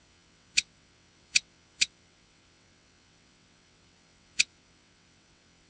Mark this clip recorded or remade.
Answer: remade